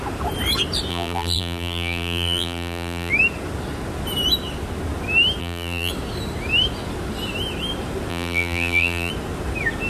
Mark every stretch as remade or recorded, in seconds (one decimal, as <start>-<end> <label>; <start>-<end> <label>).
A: 0.0-0.9 recorded; 0.9-3.1 remade; 3.1-5.4 recorded; 5.4-5.9 remade; 5.9-8.1 recorded; 8.1-9.1 remade; 9.1-9.9 recorded